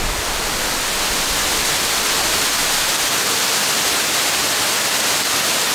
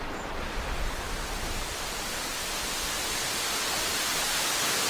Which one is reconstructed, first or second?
second